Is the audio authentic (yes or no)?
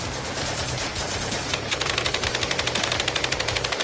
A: no